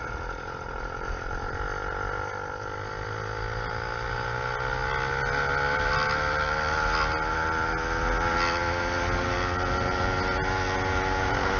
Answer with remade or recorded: recorded